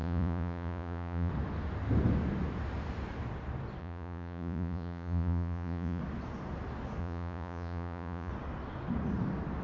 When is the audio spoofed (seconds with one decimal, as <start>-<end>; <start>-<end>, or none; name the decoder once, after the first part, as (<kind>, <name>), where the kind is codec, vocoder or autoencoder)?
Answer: 0.0-1.3 (vocoder, Vocos); 3.8-6.0; 7.0-8.3

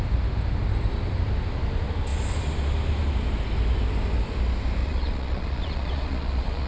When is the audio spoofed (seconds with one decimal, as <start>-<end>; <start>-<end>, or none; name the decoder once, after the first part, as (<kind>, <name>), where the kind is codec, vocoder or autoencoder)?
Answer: 4.8-6.7 (vocoder, Vocos)

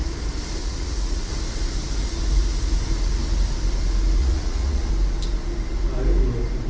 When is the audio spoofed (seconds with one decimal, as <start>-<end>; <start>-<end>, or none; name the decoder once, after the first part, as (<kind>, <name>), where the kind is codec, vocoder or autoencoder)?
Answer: 0.6-1.3 (vocoder, Vocos); 4.2-4.9

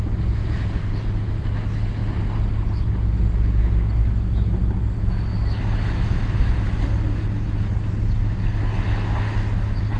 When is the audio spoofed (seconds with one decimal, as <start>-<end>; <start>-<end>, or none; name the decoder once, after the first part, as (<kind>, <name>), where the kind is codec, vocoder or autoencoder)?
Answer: 0.4-1.3 (vocoder, Vocos)

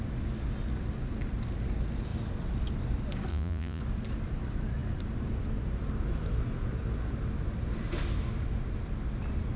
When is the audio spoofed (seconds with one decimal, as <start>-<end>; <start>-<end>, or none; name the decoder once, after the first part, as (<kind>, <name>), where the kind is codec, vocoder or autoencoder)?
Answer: 3.3-3.8 (vocoder, Vocos)

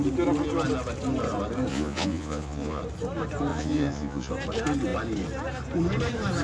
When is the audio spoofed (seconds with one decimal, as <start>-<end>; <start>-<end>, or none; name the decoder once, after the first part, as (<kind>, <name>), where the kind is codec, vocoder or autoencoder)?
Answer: 1.7-2.8 (vocoder, Vocos); 3.5-4.3

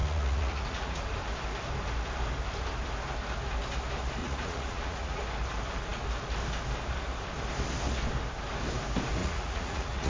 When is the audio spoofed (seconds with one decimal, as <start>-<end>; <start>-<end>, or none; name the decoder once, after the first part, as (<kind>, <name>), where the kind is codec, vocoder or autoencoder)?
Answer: 0.0-1.0 (vocoder, Vocos); 4.2-5.2; 9.2-10.1